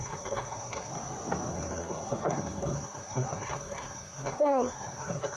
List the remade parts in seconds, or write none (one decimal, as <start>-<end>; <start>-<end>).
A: 0.0-0.9; 1.5-5.4